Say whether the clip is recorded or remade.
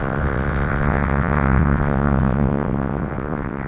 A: remade